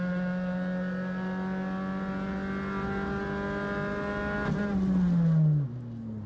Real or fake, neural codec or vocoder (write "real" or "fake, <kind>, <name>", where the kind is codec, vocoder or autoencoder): real